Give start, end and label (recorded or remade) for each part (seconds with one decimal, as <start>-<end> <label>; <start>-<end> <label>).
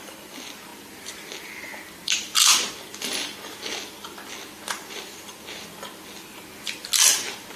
0.0-7.6 recorded